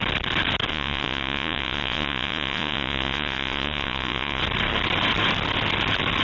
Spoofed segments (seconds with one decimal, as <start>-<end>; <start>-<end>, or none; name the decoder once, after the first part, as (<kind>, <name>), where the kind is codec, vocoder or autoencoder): 0.7-4.4 (vocoder, Vocos)